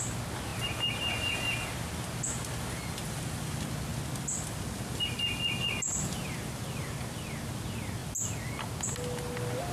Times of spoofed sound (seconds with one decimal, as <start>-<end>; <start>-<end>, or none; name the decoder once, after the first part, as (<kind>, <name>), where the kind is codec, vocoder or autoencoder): none